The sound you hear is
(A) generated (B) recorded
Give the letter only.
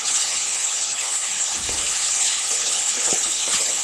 A